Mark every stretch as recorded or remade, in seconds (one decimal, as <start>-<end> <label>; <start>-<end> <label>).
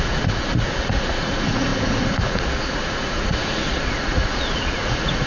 0.0-5.3 remade